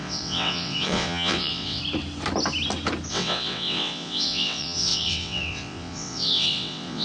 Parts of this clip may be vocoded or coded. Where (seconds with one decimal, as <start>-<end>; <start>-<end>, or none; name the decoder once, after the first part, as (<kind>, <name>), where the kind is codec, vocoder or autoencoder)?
0.0-1.8 (vocoder, WaveNeXt); 3.1-7.0